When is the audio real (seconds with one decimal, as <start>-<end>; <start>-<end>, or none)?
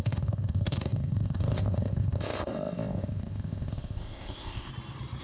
4.7-5.2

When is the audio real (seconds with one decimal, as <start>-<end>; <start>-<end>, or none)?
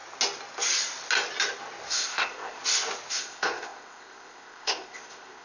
0.0-1.9; 2.6-3.1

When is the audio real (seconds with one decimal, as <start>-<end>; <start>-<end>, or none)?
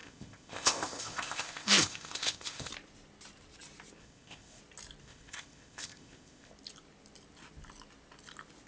2.7-4.0; 4.6-5.0; 6.5-8.7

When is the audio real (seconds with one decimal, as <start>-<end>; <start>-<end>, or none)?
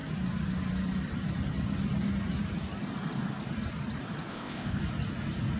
0.0-4.3; 4.8-5.6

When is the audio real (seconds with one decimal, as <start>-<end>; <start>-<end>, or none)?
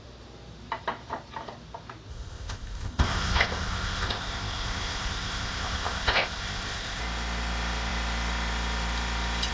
0.0-2.1; 7.0-9.5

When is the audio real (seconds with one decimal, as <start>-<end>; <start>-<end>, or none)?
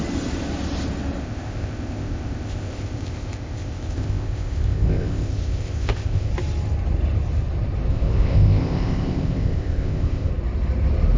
0.0-1.2; 6.3-7.9; 10.3-11.2